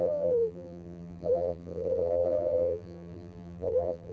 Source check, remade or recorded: remade